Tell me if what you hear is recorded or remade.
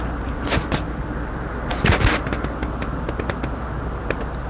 recorded